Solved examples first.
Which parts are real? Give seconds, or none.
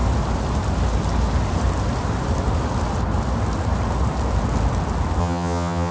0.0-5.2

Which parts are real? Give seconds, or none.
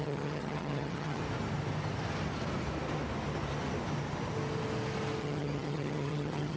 1.2-5.2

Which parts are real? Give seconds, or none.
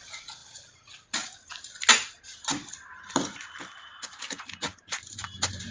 0.0-5.7